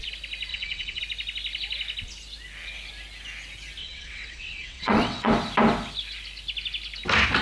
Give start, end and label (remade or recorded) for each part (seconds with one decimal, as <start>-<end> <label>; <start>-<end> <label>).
0.0-0.5 recorded; 0.5-1.0 remade; 1.0-3.8 recorded; 3.8-5.3 remade; 5.3-7.4 recorded